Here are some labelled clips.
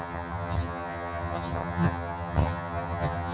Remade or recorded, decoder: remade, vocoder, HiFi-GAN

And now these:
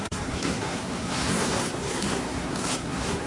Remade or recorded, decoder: remade, codec, SNAC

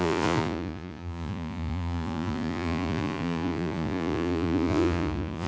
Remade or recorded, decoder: remade, vocoder, Vocos